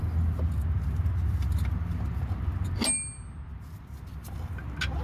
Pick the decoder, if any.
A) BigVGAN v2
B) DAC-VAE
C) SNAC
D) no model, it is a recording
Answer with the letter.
D